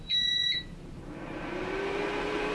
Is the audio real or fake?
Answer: fake